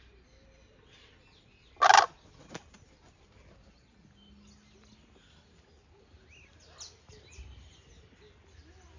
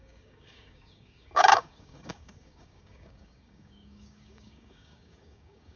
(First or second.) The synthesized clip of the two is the second